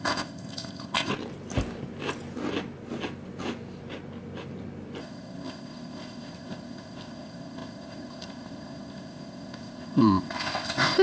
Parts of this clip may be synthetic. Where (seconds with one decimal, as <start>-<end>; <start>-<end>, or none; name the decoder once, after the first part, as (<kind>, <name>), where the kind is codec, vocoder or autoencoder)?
0.0-1.1 (codec, ZipCodec); 5.0-11.0